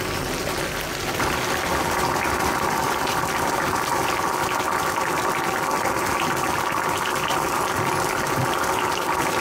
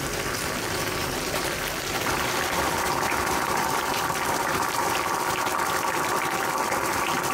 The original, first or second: first